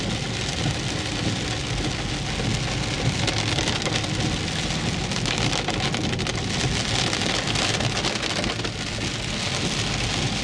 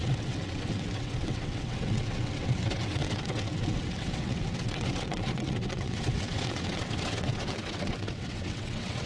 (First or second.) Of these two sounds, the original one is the first